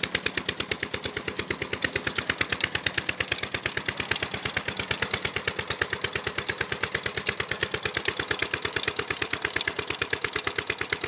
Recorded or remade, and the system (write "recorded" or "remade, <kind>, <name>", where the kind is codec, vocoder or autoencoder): recorded